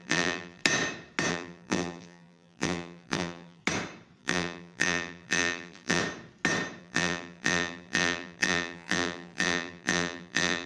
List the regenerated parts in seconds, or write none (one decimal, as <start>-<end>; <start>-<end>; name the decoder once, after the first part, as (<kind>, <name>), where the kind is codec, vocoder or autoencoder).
0.0-0.6 (vocoder, BigVGAN v2); 1.3-3.6; 4.2-6.0; 6.8-10.7